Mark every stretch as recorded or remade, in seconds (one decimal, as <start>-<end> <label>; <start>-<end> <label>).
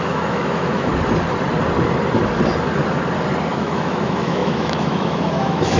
0.0-0.9 remade; 0.9-3.5 recorded; 3.5-5.8 remade